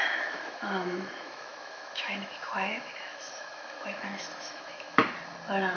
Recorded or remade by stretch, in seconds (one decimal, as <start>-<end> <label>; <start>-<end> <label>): 0.0-5.0 remade; 5.0-5.8 recorded